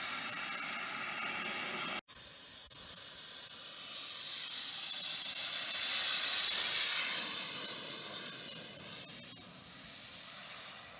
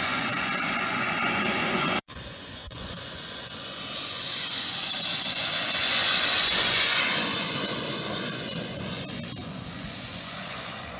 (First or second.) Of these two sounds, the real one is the first